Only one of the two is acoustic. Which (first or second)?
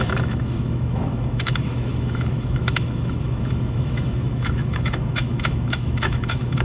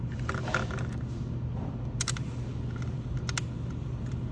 second